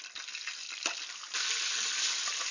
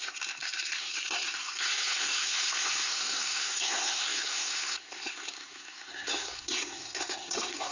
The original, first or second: first